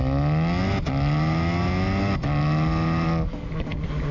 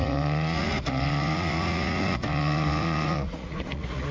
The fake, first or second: second